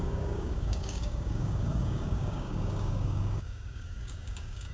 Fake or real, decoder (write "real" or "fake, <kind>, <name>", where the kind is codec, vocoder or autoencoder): fake, codec, DAC